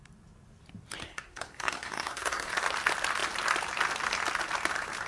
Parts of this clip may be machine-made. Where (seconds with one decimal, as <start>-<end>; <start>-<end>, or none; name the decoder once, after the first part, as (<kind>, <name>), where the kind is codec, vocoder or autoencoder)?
1.0-2.5 (codec, SNAC)